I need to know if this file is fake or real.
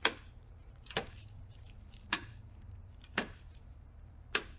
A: fake